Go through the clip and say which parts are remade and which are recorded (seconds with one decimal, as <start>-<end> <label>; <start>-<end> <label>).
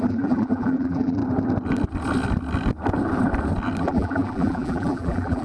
0.0-1.2 remade; 1.2-3.8 recorded; 3.8-5.4 remade